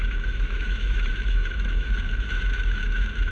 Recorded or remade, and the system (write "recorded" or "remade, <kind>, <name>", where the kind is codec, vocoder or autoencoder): remade, autoencoder, DAC-VAE